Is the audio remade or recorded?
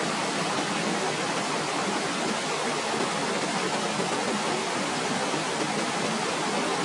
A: remade